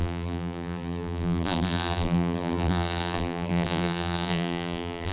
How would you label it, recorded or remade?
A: remade